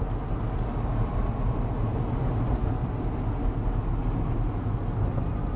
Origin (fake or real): real